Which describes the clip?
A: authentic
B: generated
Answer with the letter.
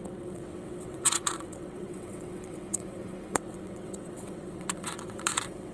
B